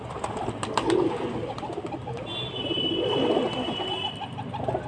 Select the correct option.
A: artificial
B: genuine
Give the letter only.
B